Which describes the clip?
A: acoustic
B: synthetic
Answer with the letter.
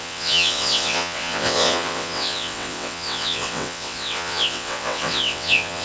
B